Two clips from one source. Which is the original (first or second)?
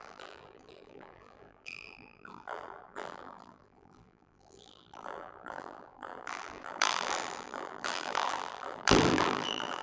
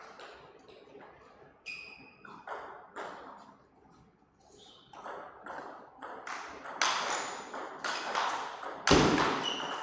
second